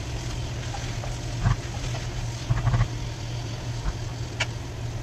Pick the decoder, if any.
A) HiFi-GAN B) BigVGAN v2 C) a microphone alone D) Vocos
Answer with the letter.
C